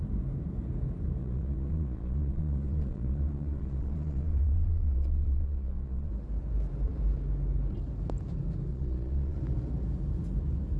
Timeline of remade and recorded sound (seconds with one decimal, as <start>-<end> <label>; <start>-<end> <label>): 0.0-1.2 recorded; 1.2-6.1 remade; 6.1-8.7 recorded; 8.7-9.4 remade; 9.4-10.8 recorded